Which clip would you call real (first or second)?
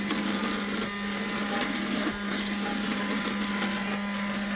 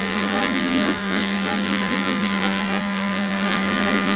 first